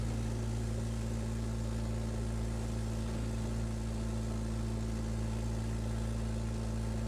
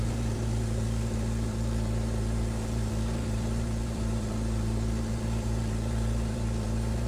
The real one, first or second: first